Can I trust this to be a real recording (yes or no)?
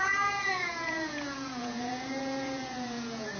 no